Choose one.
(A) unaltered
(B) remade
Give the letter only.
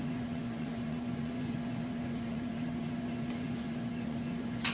B